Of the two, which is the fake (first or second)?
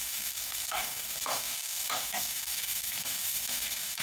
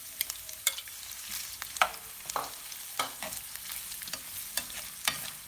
first